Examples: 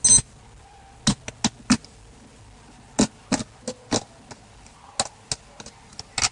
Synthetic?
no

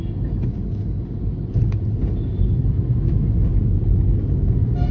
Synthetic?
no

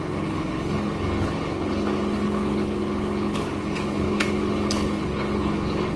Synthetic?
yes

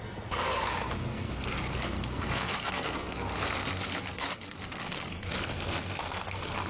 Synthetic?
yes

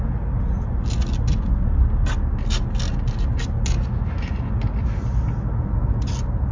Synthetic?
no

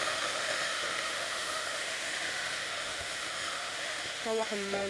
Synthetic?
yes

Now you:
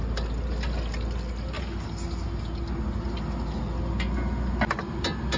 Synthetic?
no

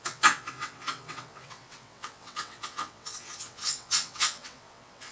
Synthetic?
yes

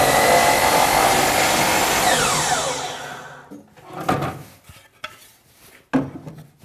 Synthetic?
no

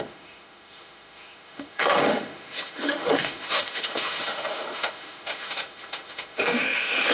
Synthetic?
yes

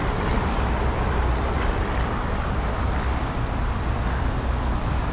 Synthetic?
no